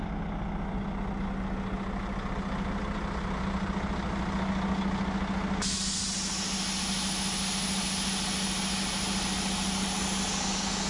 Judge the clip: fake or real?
real